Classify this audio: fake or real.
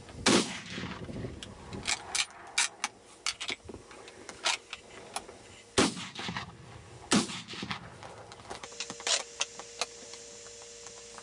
real